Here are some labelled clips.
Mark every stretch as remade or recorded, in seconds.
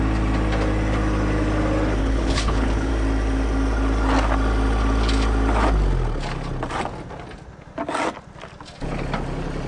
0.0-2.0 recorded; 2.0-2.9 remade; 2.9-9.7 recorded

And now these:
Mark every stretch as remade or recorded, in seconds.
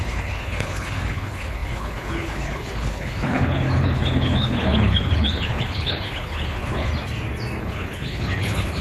0.0-6.9 remade; 6.9-7.6 recorded; 7.6-8.8 remade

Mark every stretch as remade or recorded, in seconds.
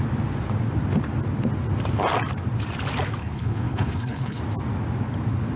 0.0-3.2 recorded; 3.2-4.4 remade; 4.4-5.6 recorded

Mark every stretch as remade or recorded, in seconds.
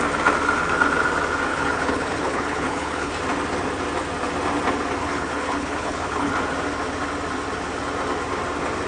0.0-1.5 recorded; 1.5-3.1 remade; 3.1-5.0 recorded; 5.0-6.3 remade; 6.3-8.9 recorded